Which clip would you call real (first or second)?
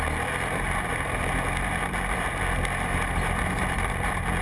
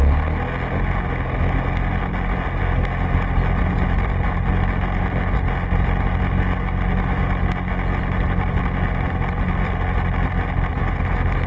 second